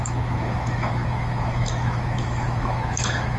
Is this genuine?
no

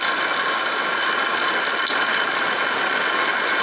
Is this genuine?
yes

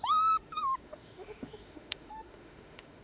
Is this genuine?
no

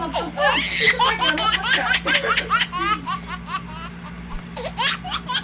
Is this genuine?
yes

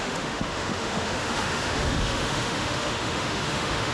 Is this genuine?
no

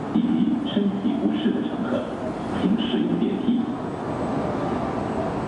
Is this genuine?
yes